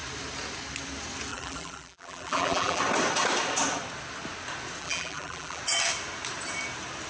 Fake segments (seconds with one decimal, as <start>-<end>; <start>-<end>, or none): 1.3-2.8; 4.8-5.6